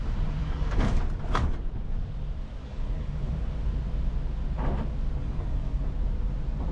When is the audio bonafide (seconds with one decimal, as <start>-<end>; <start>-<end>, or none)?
0.0-0.4; 1.0-2.6; 3.3-5.2; 5.8-6.7